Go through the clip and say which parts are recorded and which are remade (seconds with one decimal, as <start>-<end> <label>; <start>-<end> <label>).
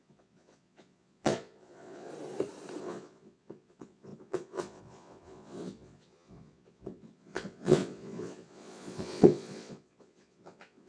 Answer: 0.0-2.1 remade; 2.1-2.8 recorded; 2.8-10.9 remade